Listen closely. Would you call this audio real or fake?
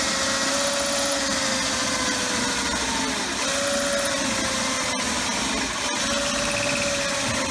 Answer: real